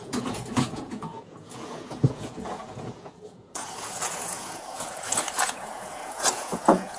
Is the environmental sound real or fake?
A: fake